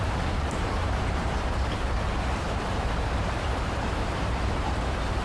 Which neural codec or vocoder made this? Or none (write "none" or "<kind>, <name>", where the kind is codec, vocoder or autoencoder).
vocoder, BigVGAN v2